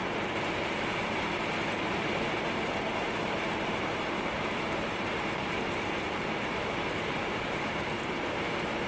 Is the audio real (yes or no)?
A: no